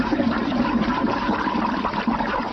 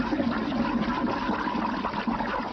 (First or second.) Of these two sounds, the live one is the second